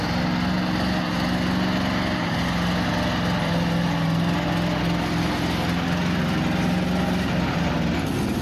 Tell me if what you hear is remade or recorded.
recorded